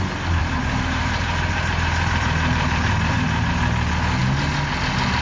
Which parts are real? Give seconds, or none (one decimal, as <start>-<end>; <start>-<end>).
0.0-0.4; 3.5-5.2